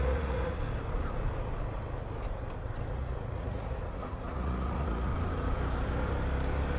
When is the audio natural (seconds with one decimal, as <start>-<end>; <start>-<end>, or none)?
0.6-2.9; 5.1-6.8